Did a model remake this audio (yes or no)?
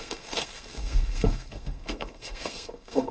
yes